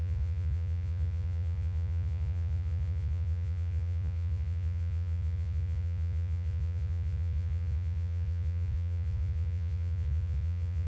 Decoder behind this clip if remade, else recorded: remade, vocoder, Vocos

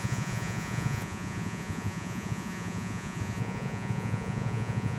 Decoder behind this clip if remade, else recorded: remade, vocoder, Vocos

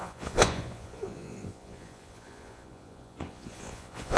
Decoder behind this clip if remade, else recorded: remade, vocoder, Vocos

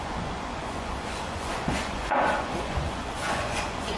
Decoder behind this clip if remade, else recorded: remade, vocoder, Vocos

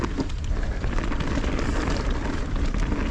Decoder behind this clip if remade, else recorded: recorded